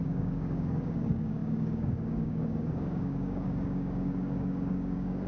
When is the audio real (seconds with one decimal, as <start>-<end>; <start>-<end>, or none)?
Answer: none